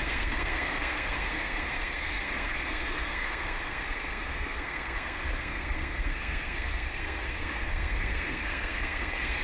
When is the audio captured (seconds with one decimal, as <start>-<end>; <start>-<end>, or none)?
none